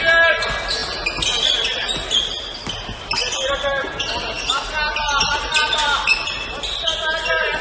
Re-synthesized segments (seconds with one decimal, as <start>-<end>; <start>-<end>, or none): none